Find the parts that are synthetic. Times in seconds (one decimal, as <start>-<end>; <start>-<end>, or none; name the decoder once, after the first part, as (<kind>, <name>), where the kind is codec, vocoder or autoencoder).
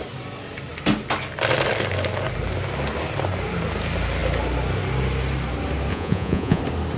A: 5.9-6.6 (vocoder, Vocos)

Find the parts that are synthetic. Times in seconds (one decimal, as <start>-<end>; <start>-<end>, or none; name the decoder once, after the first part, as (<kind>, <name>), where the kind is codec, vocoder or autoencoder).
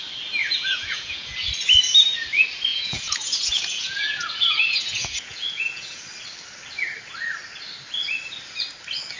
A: 0.4-1.5 (vocoder, Vocos); 2.7-6.0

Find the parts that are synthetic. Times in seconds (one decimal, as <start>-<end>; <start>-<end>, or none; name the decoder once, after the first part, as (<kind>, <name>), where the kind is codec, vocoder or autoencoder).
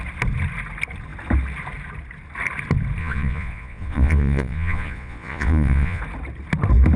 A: 3.0-6.0 (vocoder, Vocos)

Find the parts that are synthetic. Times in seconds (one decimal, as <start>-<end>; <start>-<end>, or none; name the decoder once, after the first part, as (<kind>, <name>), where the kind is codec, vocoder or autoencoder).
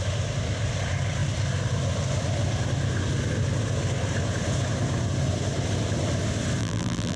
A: 6.6-7.2 (vocoder, BigVGAN v2)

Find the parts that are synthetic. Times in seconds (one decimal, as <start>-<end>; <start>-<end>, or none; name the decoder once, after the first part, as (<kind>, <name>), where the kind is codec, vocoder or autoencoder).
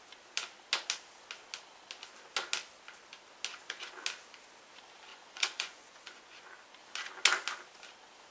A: 5.1-6.5 (vocoder, Vocos)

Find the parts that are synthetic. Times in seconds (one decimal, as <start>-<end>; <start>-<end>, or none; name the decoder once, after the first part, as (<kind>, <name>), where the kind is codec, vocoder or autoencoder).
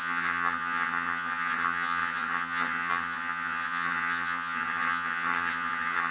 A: 0.0-6.1 (vocoder, HiFi-GAN)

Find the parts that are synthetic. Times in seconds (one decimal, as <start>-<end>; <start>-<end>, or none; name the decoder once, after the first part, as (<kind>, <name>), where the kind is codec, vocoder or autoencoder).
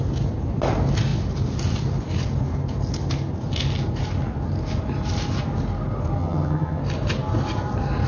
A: 6.2-6.8 (vocoder, HiFi-GAN)